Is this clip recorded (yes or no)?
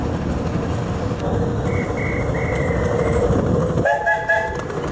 yes